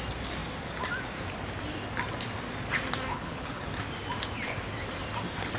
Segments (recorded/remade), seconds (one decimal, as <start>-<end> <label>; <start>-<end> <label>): 0.0-3.1 recorded; 3.1-3.6 remade; 3.6-5.6 recorded